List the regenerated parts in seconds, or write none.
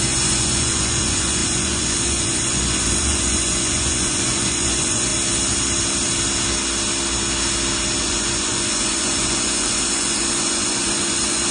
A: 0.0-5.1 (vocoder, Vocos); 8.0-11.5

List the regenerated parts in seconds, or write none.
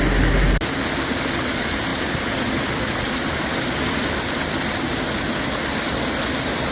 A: none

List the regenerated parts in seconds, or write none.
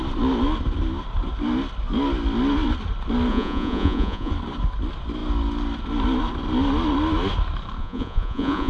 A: 3.3-4.3 (vocoder, Vocos); 7.8-8.7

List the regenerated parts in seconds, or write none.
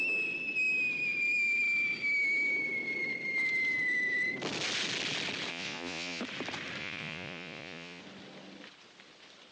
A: 5.5-6.2 (vocoder, Vocos); 6.8-8.0